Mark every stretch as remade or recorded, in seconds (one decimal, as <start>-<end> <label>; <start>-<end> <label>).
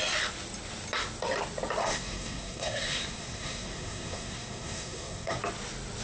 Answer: 0.0-1.8 recorded; 1.8-5.4 remade; 5.4-6.0 recorded